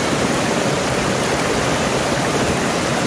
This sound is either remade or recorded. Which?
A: recorded